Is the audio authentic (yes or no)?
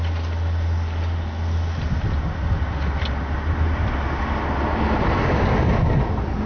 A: yes